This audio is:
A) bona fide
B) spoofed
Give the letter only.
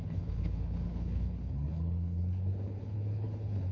B